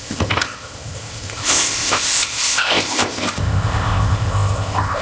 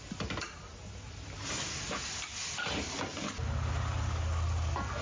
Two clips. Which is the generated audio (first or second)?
first